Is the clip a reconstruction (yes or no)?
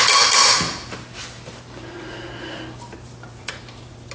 no